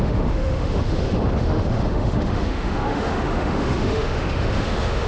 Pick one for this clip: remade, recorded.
remade